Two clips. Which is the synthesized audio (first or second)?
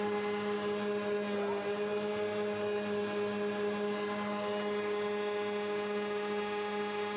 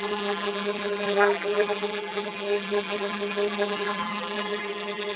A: second